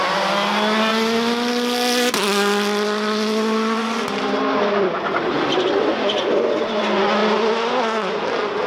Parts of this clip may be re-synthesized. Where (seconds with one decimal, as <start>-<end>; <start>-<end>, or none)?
none